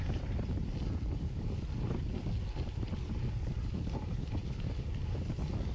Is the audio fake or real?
real